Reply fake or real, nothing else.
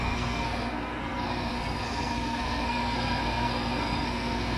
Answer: fake